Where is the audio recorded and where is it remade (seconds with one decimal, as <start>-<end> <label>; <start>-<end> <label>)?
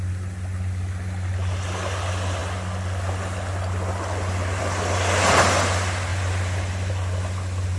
0.0-7.8 recorded